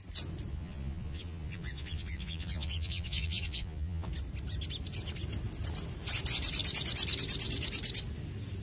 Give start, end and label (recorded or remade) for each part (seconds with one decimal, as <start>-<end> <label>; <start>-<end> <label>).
0.0-0.5 recorded; 0.5-4.1 remade; 4.1-8.6 recorded